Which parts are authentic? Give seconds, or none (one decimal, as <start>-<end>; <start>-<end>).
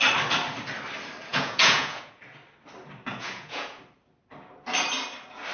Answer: 0.0-1.3; 2.2-3.1; 3.8-5.5